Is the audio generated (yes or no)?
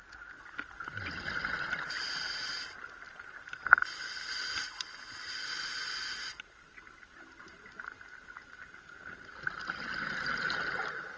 no